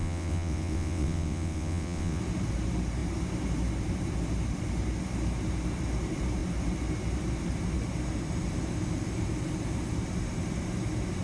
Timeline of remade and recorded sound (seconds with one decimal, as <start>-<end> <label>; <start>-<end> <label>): 0.0-2.2 remade; 2.2-11.2 recorded